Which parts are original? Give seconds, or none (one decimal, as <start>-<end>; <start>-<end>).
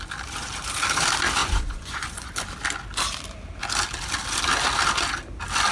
0.0-1.4; 2.3-5.7